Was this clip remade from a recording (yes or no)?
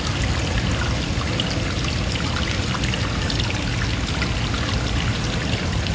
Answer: no